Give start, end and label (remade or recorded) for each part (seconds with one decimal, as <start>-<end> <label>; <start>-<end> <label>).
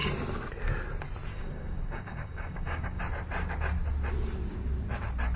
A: 0.0-1.3 recorded; 1.3-3.0 remade; 3.0-5.4 recorded